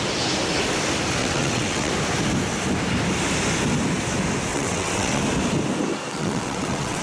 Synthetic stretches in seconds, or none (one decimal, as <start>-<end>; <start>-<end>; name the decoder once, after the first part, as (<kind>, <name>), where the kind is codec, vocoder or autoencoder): 1.2-1.9 (vocoder, WaveNeXt); 4.5-5.2; 6.1-7.0